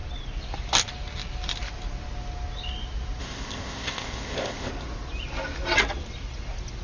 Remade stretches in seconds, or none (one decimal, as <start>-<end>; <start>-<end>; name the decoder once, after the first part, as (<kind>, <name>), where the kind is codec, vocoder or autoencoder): 3.2-4.7 (codec, ZipCodec)